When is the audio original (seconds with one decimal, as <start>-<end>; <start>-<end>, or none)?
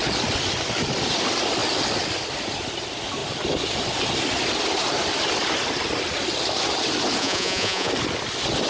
0.0-7.2; 7.9-8.7